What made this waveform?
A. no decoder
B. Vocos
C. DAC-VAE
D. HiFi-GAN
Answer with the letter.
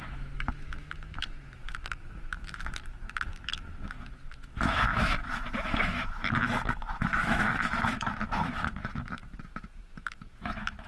C